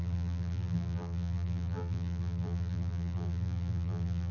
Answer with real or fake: fake